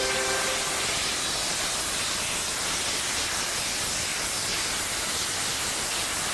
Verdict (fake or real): real